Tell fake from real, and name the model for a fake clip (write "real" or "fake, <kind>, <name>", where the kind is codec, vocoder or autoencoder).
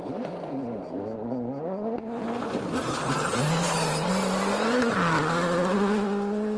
real